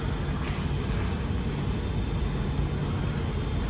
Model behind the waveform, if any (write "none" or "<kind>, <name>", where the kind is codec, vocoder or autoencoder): none